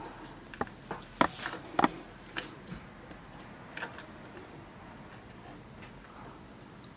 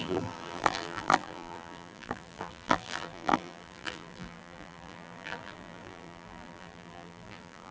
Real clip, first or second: first